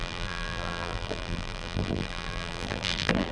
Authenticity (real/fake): fake